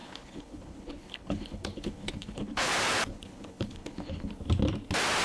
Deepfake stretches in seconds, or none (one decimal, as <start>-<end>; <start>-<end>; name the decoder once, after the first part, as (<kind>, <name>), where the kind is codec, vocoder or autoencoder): 0.0-2.7 (codec, HILCodec); 3.1-4.3